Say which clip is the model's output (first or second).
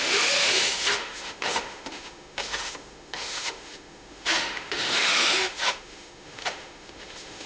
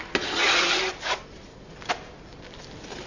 first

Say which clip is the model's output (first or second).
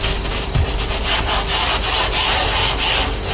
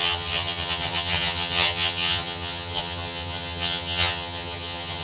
second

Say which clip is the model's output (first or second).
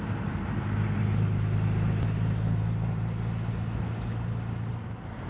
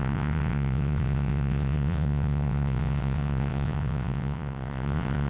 second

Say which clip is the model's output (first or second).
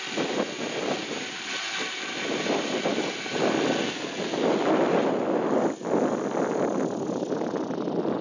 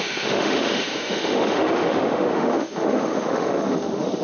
second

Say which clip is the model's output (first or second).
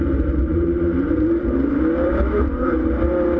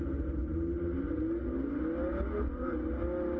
first